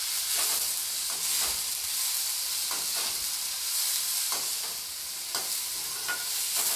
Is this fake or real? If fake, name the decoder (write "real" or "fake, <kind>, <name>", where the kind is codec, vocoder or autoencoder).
real